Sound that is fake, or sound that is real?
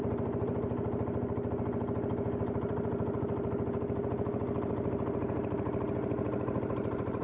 real